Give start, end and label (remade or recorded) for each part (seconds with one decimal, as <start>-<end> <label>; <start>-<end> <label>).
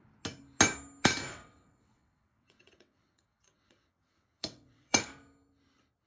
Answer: 0.0-1.3 recorded; 1.3-5.0 remade; 5.0-6.1 recorded